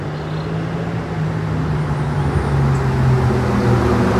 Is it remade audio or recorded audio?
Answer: recorded